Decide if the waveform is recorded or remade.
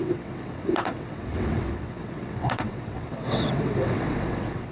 remade